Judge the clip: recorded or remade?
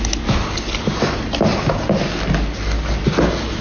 recorded